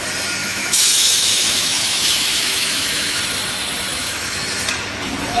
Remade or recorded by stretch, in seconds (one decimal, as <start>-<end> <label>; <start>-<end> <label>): 0.0-0.4 recorded; 0.4-3.2 remade; 3.2-3.9 recorded; 3.9-4.4 remade; 4.4-5.4 recorded